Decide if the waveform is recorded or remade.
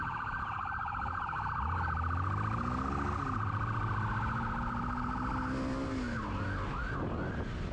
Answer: recorded